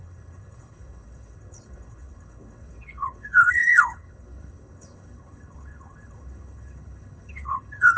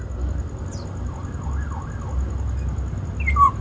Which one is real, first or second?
second